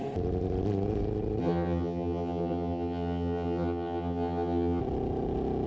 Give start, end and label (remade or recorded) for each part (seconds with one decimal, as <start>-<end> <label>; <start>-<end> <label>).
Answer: 0.0-1.4 recorded; 1.4-4.8 remade; 4.8-5.7 recorded